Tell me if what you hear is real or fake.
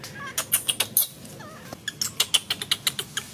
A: real